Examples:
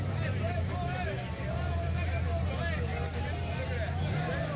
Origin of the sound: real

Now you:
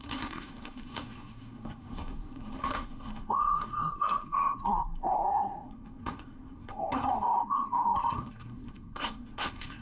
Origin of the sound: fake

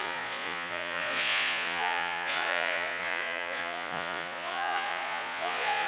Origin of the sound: fake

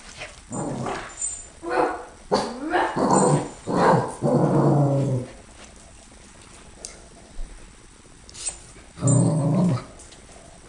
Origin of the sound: real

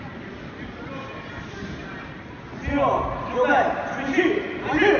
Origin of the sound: real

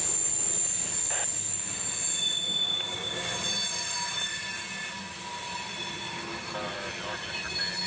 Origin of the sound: real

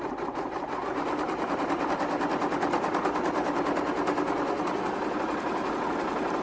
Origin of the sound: real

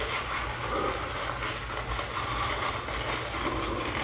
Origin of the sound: real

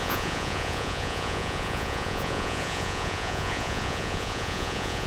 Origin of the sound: fake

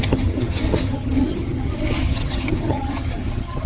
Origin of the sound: fake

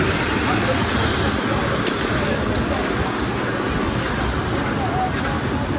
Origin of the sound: real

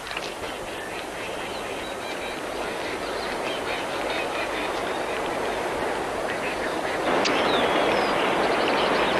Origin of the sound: real